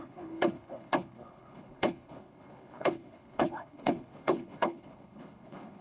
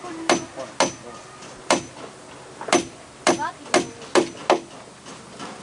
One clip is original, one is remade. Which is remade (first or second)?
first